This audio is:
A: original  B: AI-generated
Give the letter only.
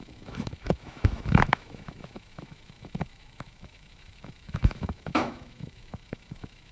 B